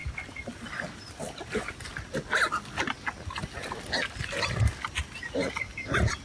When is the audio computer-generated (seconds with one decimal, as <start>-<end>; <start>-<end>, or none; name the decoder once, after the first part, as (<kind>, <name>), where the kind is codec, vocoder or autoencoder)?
none